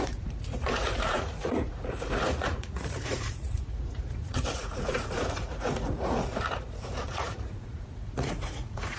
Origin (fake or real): fake